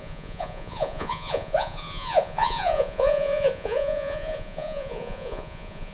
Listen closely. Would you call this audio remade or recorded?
remade